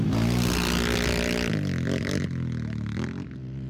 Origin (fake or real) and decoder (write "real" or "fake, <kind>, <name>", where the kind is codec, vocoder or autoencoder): real